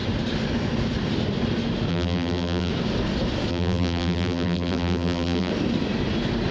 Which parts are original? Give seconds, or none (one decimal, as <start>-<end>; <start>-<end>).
0.0-1.9; 2.7-3.5; 5.5-6.5